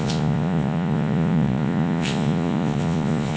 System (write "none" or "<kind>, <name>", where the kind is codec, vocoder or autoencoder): vocoder, Vocos